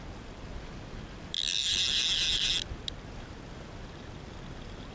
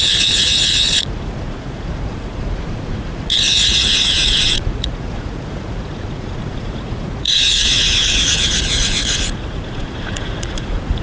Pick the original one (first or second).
first